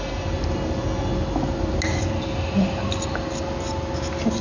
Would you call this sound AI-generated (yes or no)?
no